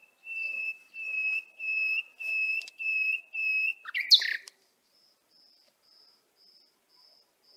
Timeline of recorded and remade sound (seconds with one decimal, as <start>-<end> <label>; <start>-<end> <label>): 0.0-7.6 recorded